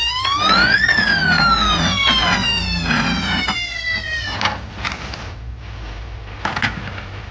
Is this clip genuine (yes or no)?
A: yes